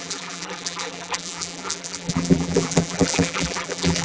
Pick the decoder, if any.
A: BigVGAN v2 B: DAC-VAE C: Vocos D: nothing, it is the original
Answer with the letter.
A